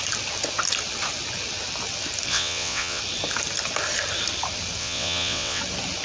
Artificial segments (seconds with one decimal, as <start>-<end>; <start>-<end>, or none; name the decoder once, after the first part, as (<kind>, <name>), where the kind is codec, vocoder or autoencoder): 2.3-3.0 (vocoder, WaveNeXt); 4.8-5.6

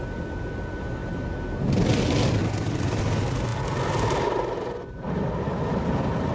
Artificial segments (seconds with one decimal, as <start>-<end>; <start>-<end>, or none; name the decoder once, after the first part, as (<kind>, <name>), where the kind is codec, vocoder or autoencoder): none

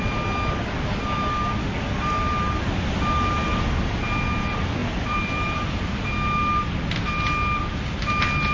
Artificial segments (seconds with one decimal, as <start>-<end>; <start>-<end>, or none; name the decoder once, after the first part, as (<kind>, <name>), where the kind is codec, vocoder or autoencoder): 4.8-5.9 (vocoder, BigVGAN v2)

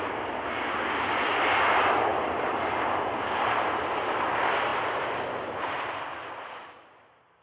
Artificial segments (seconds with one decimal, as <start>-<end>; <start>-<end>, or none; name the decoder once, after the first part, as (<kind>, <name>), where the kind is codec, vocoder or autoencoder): none

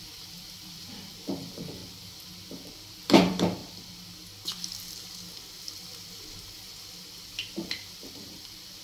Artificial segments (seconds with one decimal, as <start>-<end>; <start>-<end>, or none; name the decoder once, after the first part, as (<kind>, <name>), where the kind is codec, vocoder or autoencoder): 0.0-1.8 (vocoder, BigVGAN v2); 2.7-3.6; 5.7-8.8

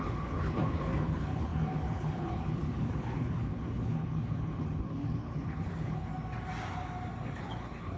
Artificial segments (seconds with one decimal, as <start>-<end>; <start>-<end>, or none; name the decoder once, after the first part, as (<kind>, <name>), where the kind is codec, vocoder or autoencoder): 0.0-6.1 (codec, HILCodec); 7.4-8.0

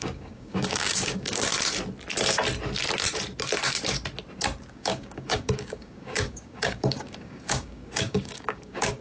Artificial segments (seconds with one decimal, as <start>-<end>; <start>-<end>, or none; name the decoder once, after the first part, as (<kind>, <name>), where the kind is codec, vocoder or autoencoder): 0.0-1.5 (codec, DAC); 4.7-9.0